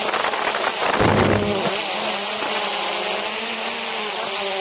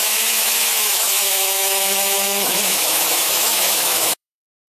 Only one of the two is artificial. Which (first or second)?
second